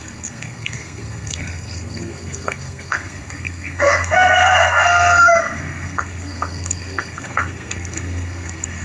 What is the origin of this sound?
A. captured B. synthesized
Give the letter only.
B